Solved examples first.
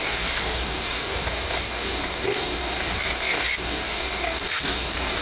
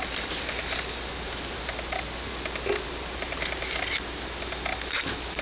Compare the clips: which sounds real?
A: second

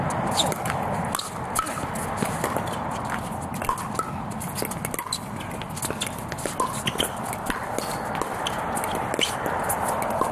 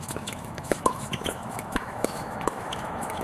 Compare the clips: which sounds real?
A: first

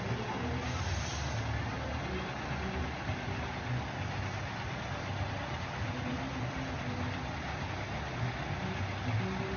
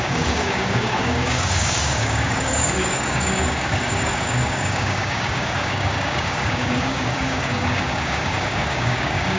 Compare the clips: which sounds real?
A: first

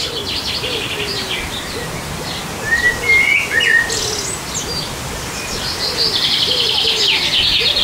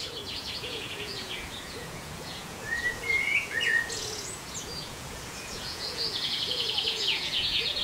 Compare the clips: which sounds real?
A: first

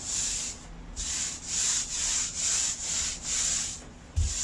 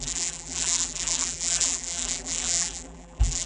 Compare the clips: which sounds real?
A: first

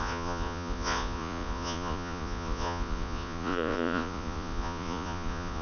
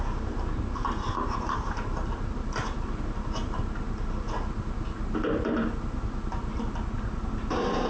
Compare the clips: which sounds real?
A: second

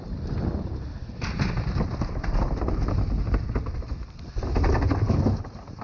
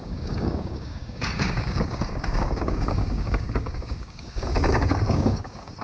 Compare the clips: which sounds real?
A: first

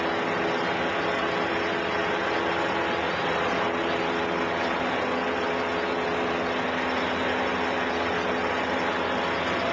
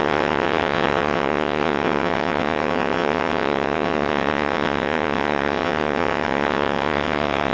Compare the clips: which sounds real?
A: first